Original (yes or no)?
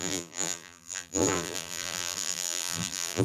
no